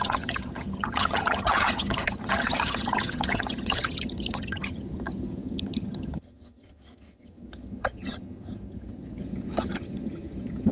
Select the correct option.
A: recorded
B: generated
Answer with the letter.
B